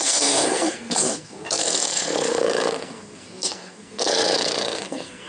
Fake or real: fake